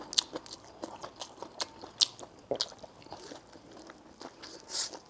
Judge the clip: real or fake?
real